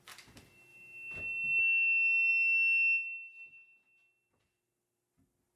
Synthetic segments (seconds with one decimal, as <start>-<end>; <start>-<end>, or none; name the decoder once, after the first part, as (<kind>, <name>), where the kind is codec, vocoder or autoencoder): none